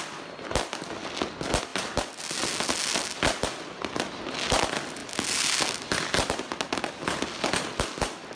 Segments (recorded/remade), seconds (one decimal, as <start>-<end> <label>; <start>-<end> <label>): 0.0-8.4 recorded